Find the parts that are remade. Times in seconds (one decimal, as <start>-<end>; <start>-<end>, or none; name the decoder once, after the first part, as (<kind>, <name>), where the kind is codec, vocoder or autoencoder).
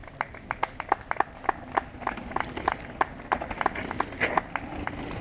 none